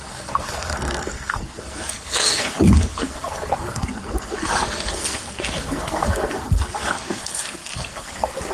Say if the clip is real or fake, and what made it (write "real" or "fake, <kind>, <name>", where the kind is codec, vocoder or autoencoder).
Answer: fake, codec, SNAC